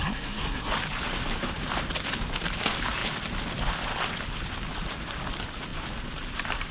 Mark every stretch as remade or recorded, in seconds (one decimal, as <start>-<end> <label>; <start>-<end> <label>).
0.0-0.7 remade; 0.7-6.7 recorded

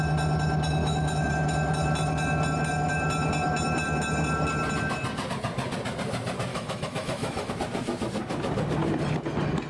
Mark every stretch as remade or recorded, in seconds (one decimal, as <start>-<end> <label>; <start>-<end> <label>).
0.0-0.8 recorded; 0.8-1.3 remade; 1.3-6.5 recorded; 6.5-7.5 remade; 7.5-9.7 recorded